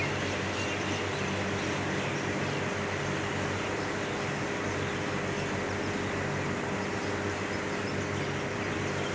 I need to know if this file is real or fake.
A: real